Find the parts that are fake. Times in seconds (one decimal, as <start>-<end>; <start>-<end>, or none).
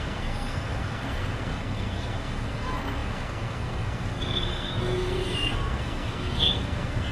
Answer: 0.0-7.1